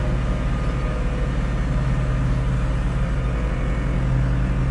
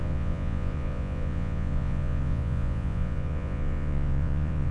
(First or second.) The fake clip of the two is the second